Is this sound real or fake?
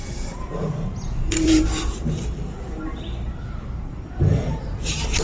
fake